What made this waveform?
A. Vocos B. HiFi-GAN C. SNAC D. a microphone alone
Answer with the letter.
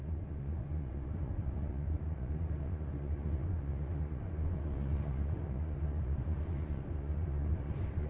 A